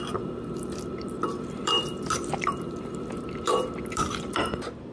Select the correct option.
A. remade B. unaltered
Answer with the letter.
A